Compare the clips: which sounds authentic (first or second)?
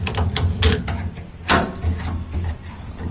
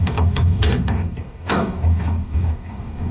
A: first